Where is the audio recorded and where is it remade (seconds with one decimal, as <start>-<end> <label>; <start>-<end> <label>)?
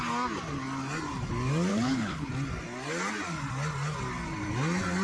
0.0-1.7 recorded; 1.7-2.3 remade; 2.3-5.0 recorded